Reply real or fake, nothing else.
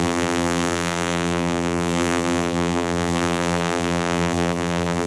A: fake